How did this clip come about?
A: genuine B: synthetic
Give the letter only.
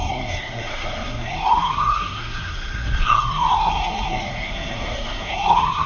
B